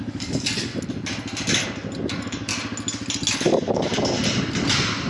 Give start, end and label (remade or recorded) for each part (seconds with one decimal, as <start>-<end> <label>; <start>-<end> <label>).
0.0-0.7 remade; 0.7-2.0 recorded; 2.0-2.5 remade; 2.5-3.3 recorded; 3.3-3.9 remade; 3.9-5.1 recorded